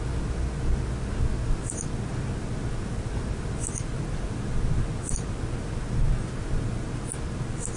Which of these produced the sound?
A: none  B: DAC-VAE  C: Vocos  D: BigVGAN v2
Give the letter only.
A